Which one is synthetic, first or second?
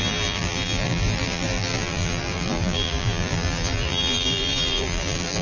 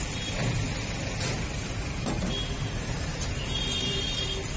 first